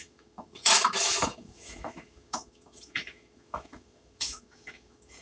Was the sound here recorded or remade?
remade